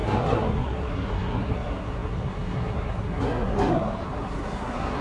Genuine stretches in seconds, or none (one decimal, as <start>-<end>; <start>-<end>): none